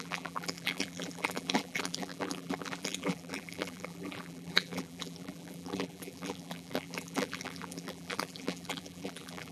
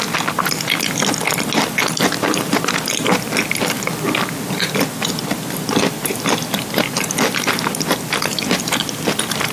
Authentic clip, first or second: second